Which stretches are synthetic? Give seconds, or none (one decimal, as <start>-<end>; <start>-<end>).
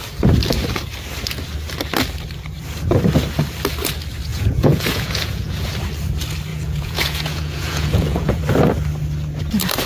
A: 4.3-5.7; 6.5-8.4